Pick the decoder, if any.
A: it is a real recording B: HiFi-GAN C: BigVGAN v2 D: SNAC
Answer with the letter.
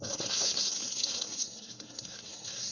D